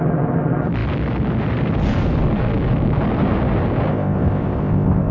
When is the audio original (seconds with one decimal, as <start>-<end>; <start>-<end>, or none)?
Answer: 0.0-3.9